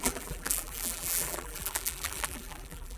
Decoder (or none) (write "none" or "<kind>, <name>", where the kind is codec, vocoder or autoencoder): vocoder, BigVGAN v2